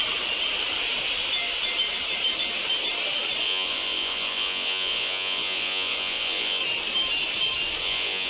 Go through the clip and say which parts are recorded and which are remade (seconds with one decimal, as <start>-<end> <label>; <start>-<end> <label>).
0.0-3.4 recorded; 3.4-6.6 remade; 6.6-7.8 recorded; 7.8-8.3 remade